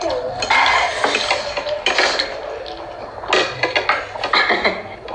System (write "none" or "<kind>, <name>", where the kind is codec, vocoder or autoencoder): none